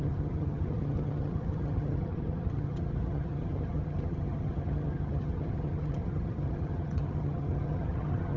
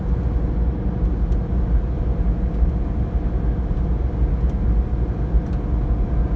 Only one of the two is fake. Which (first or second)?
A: first